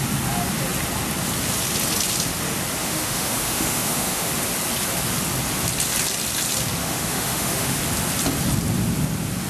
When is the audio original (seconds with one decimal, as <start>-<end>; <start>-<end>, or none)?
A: 0.0-2.8; 4.3-6.8; 7.8-9.5